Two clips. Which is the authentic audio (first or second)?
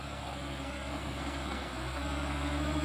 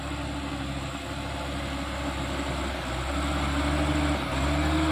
second